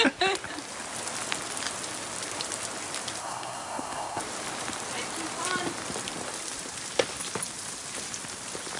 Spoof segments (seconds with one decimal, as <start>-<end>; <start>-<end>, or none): 3.2-4.2